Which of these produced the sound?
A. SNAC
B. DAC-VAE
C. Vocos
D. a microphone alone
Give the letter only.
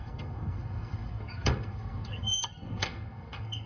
A